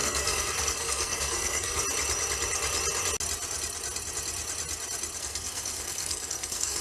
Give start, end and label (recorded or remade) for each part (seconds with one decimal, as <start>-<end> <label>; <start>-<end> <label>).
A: 0.0-1.8 remade; 1.8-5.2 recorded; 5.2-6.8 remade